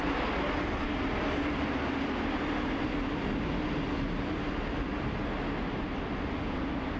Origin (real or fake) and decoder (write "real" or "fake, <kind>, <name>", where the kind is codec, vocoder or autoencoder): real